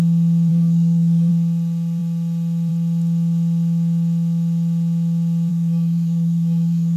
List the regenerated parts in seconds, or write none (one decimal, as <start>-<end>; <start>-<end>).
0.5-1.3; 5.5-7.0